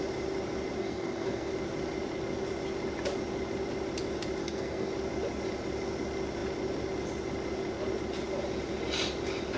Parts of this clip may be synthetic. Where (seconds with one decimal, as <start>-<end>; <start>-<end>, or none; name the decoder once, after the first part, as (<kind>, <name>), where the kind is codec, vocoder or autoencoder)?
0.8-1.5 (codec, SNAC); 4.4-4.9